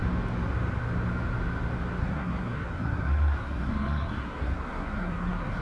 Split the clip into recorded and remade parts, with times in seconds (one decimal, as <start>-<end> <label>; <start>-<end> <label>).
0.0-2.0 recorded; 2.0-5.6 remade